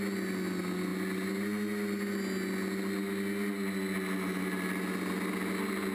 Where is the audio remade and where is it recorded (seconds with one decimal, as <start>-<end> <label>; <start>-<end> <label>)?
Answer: 0.0-5.9 recorded